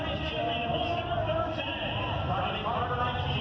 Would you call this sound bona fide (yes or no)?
yes